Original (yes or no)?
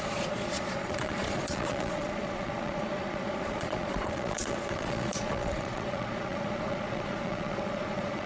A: no